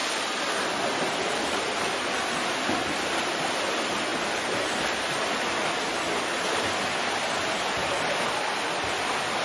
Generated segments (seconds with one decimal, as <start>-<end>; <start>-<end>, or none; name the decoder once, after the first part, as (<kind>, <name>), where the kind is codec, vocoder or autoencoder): none